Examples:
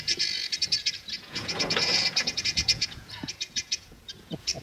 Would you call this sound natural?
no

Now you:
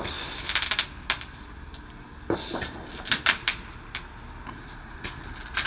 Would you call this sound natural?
yes